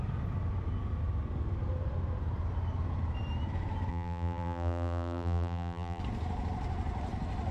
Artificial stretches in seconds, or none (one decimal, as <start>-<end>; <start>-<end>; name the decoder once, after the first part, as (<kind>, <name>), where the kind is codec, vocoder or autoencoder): 3.9-6.0 (vocoder, BigVGAN v2)